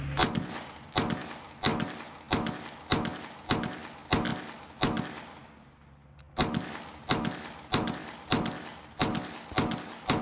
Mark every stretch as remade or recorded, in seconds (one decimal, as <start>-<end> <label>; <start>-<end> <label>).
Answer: 0.0-10.2 recorded